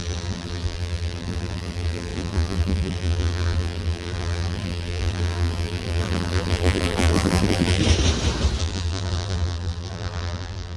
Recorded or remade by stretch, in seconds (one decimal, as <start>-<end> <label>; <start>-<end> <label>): 0.0-7.8 remade; 7.8-8.6 recorded; 8.6-10.8 remade